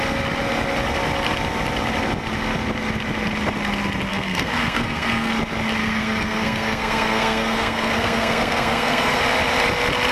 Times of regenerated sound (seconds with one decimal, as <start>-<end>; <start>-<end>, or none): 4.1-5.3; 5.8-9.2